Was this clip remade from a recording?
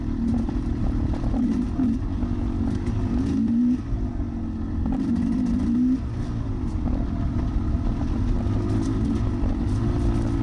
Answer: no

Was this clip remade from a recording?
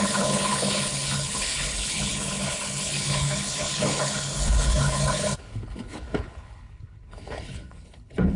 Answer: yes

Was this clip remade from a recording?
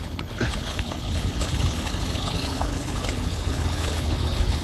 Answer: yes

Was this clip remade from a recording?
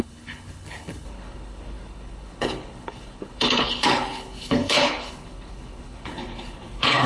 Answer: yes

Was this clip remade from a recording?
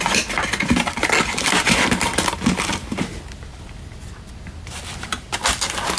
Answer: no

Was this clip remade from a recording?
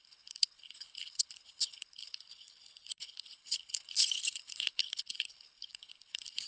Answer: yes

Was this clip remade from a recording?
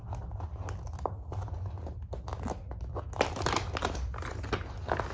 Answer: no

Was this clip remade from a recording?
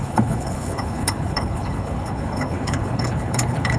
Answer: yes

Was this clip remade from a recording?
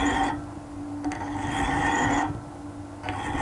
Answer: no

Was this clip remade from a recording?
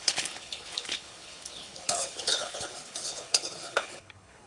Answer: yes